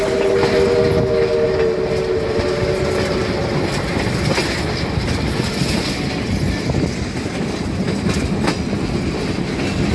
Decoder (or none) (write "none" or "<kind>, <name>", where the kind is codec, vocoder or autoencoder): none